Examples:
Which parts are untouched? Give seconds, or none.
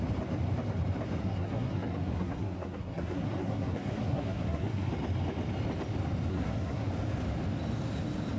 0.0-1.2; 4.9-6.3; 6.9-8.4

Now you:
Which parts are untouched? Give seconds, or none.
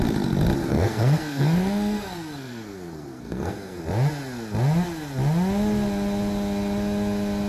0.0-0.6; 3.8-7.5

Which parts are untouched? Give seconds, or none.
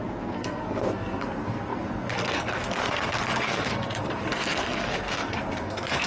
none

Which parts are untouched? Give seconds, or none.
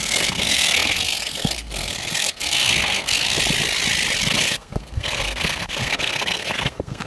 3.4-4.4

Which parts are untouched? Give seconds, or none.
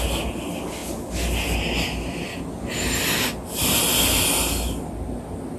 0.0-5.6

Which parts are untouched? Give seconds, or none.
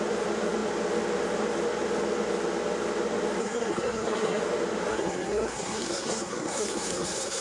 0.0-3.4; 4.4-4.9